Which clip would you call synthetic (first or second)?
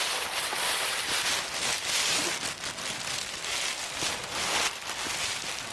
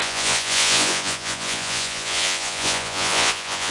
second